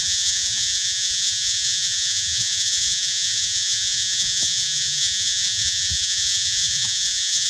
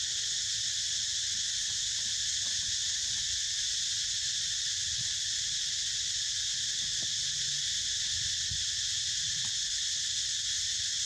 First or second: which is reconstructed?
first